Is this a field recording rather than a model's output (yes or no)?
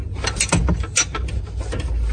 yes